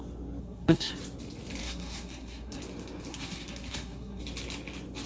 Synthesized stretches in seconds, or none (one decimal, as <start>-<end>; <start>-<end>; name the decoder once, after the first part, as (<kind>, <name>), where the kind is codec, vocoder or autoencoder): 0.4-0.9 (codec, SNAC); 1.6-2.6; 3.1-4.2

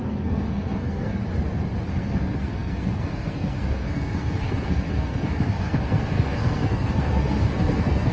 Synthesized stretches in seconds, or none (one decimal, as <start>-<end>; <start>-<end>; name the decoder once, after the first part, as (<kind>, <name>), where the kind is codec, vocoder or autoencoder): 0.0-1.2 (codec, SNAC); 1.9-8.1

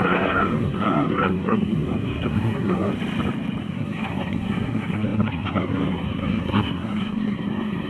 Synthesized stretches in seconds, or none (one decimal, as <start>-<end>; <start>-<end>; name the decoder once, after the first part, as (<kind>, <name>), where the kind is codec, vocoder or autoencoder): 0.0-2.9 (codec, SNAC); 3.6-7.9

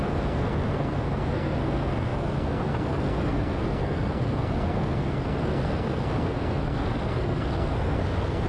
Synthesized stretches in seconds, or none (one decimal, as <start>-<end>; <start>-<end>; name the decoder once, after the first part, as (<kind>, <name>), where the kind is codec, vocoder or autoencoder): 0.0-8.5 (codec, SNAC)

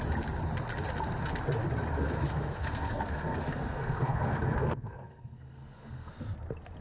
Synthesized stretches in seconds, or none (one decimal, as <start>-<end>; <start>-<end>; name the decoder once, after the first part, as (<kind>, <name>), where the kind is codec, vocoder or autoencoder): 2.0-6.1 (codec, SNAC)

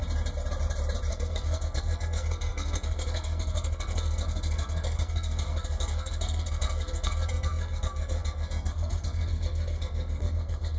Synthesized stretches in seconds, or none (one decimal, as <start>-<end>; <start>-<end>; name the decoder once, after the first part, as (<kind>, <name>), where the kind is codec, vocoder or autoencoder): 1.1-10.8 (codec, SNAC)